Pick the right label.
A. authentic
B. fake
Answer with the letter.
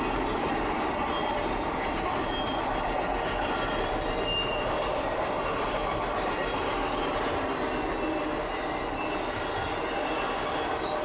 A